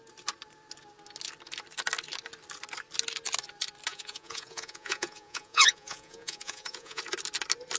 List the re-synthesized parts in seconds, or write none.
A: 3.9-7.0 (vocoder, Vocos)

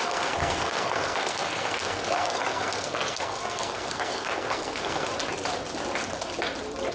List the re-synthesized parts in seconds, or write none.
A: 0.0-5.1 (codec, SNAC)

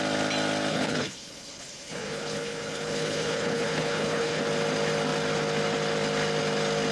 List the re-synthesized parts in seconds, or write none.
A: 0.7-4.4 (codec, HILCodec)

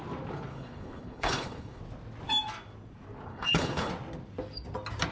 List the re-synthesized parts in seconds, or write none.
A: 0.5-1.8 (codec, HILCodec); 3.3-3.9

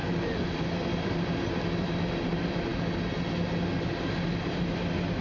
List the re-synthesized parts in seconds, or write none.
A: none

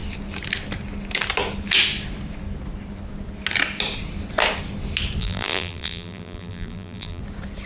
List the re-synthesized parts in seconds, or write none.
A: 5.2-7.2 (vocoder, BigVGAN v2)

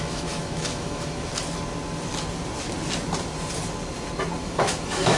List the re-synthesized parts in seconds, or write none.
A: 0.0-1.3 (autoencoder, DAC-VAE); 4.4-5.2

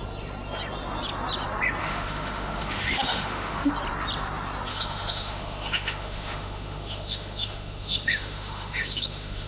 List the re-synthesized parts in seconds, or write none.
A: 1.8-3.7 (autoencoder, DAC-VAE); 4.7-9.5